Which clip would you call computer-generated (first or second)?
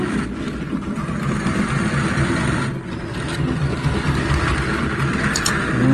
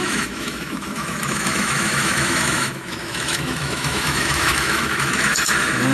second